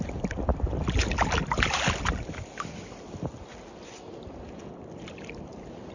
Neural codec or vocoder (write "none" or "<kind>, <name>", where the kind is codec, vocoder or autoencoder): none